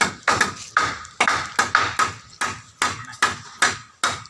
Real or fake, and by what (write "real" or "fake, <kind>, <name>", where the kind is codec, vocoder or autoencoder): real